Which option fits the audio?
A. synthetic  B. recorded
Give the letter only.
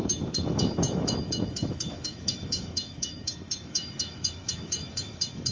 A